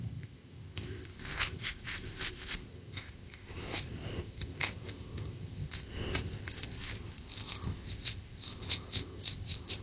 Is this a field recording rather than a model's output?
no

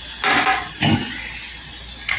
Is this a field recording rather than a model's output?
yes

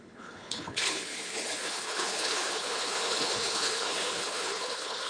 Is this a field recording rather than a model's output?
no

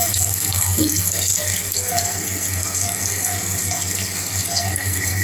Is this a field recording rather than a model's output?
no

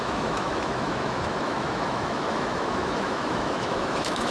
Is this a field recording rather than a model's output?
no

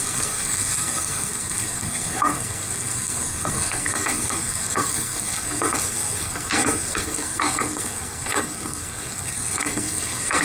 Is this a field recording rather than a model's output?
no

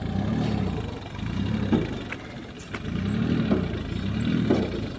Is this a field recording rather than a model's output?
yes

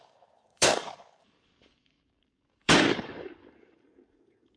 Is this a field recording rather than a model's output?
no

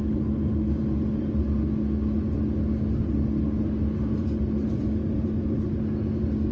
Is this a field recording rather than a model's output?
yes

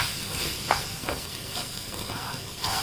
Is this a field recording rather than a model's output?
no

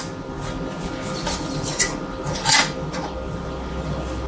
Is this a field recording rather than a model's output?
yes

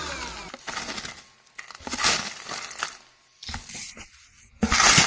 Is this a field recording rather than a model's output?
yes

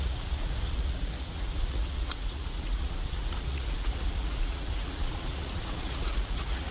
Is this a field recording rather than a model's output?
no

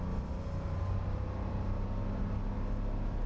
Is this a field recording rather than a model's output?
yes